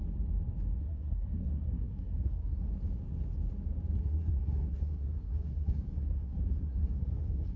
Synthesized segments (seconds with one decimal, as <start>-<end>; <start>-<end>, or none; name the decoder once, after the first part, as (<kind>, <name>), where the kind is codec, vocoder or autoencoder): 0.8-2.7 (codec, SNAC); 4.0-7.6